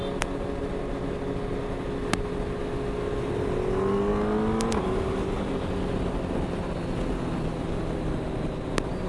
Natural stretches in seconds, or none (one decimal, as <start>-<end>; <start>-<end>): 0.0-9.1